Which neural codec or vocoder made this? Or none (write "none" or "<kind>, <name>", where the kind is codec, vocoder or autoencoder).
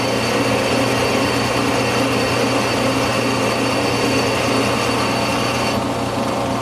none